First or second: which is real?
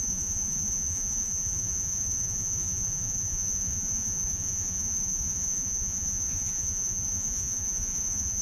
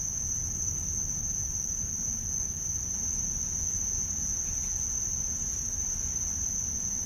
second